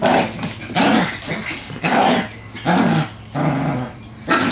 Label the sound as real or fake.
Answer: real